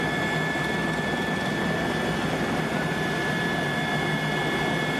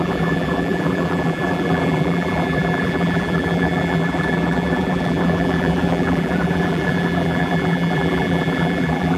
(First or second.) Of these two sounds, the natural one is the first